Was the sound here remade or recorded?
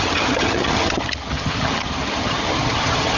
remade